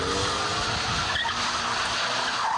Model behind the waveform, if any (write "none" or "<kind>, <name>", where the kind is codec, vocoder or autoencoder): none